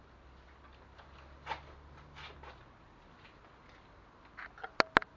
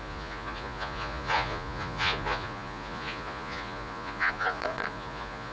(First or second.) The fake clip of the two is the second